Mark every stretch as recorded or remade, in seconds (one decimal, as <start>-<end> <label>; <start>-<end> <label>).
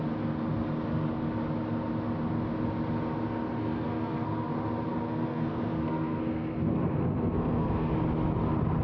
0.0-3.6 recorded; 3.6-4.5 remade; 4.5-4.9 recorded; 4.9-7.9 remade; 7.9-8.8 recorded